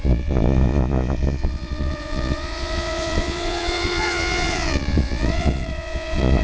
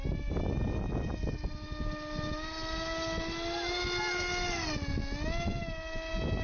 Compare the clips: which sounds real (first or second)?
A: second